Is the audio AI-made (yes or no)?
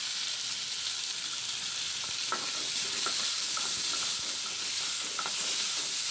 no